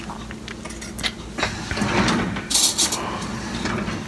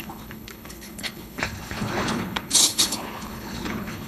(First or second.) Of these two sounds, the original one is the first